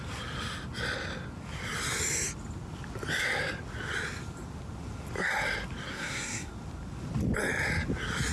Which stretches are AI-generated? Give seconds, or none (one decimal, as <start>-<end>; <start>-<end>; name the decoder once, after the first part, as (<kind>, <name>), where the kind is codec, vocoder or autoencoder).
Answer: 5.9-6.5 (codec, SNAC)